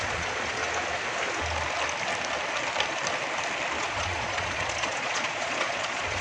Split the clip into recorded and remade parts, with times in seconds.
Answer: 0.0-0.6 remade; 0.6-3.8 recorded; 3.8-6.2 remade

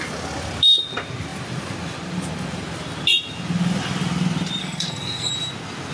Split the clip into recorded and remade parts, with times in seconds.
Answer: 0.0-4.6 recorded; 4.6-5.3 remade; 5.3-5.9 recorded

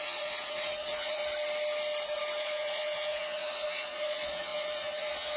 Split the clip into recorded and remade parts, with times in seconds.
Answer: 0.0-1.2 remade; 1.2-2.4 recorded; 2.4-5.4 remade

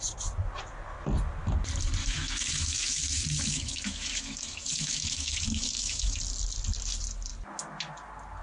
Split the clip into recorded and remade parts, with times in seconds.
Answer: 0.0-2.0 recorded; 2.0-6.2 remade; 6.2-8.4 recorded

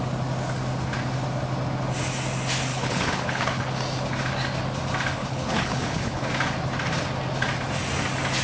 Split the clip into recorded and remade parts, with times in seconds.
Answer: 0.0-2.7 recorded; 2.7-3.7 remade; 3.7-5.2 recorded; 5.2-6.3 remade; 6.3-8.4 recorded

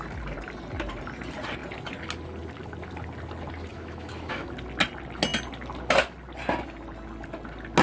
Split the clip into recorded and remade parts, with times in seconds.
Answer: 0.0-3.7 recorded; 3.7-4.5 remade; 4.5-7.8 recorded

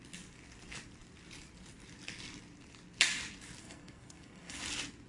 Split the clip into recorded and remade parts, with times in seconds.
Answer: 0.0-3.6 recorded; 3.6-4.6 remade; 4.6-5.1 recorded

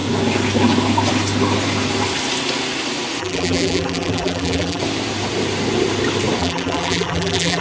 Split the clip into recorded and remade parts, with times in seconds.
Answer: 0.0-3.2 recorded; 3.2-4.8 remade; 4.8-6.4 recorded; 6.4-7.6 remade